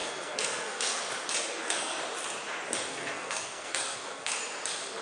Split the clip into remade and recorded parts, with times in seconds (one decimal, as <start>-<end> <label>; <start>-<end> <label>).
0.0-1.0 remade; 1.0-1.5 recorded; 1.5-2.0 remade; 2.0-2.9 recorded; 2.9-4.3 remade; 4.3-5.0 recorded